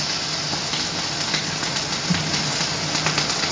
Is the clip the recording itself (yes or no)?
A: yes